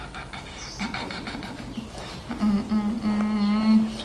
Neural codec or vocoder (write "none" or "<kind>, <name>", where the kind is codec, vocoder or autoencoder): none